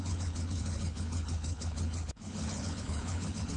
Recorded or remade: remade